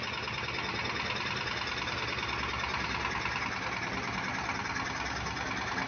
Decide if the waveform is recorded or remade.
recorded